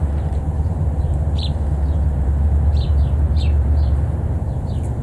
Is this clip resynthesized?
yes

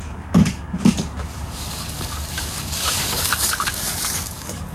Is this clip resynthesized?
yes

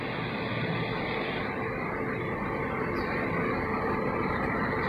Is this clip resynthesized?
no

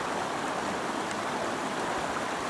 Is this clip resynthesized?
no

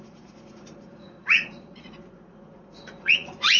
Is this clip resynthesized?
yes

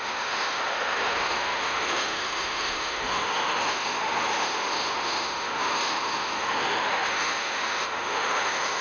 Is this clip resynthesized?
yes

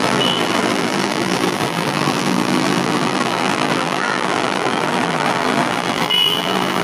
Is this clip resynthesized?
yes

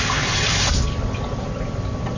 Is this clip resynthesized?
no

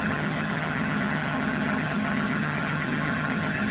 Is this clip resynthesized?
yes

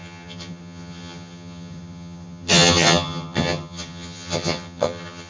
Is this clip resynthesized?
yes